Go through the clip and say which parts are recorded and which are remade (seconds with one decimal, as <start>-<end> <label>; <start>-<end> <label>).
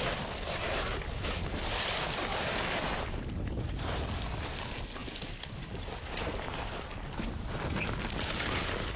0.0-9.0 recorded